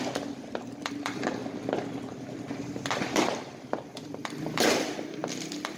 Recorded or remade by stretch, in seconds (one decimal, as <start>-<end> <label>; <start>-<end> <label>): 0.0-1.4 remade; 1.4-3.1 recorded; 3.1-5.2 remade; 5.2-5.8 recorded